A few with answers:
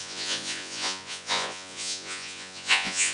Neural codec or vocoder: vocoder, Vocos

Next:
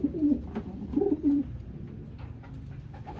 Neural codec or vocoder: none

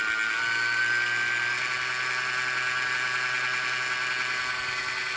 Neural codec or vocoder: none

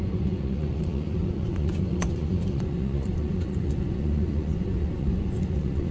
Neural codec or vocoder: vocoder, Vocos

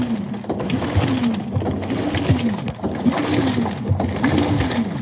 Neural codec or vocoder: none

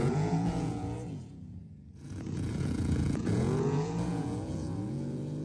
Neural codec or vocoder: vocoder, Vocos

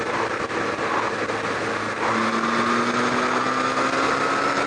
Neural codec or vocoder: none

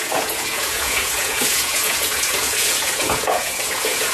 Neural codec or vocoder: vocoder, Vocos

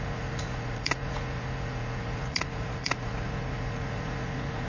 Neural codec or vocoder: vocoder, Vocos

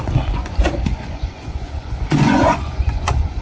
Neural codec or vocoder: vocoder, Vocos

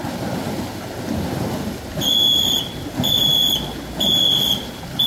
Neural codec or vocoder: none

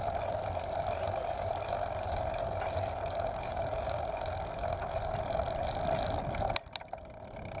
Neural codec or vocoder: none